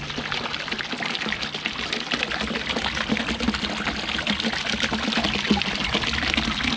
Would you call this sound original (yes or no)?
yes